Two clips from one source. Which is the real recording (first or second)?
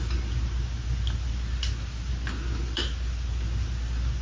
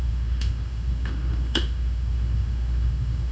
first